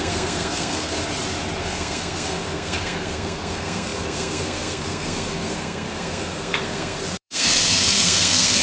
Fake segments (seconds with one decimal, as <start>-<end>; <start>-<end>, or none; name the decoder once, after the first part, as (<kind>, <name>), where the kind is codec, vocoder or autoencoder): 0.0-1.0 (codec, SNAC); 1.6-8.6

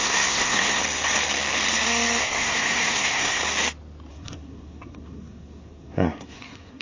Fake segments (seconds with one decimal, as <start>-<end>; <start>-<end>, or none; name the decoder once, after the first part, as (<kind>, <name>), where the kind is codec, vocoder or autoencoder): 0.0-0.8 (codec, SNAC); 2.2-3.4; 4.1-6.8

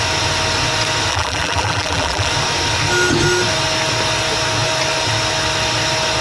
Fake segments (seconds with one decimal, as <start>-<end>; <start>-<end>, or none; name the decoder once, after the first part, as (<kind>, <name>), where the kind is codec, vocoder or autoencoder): 1.1-2.3 (vocoder, BigVGAN v2)

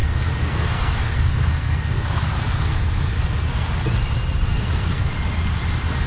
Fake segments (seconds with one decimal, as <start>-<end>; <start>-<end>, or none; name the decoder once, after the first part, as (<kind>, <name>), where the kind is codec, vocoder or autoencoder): 0.0-3.7 (codec, SNAC); 4.5-5.1